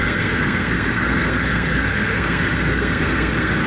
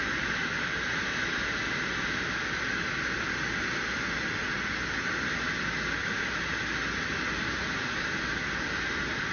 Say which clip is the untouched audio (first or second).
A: second